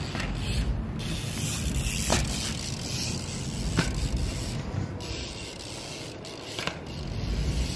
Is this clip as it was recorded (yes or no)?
yes